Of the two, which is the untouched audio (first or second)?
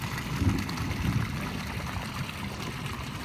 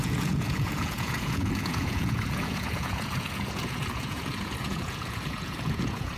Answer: first